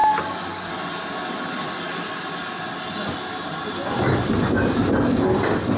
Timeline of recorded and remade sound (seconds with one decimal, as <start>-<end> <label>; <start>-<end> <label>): 0.0-0.7 remade; 0.7-5.8 recorded